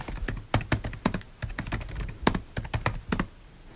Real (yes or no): yes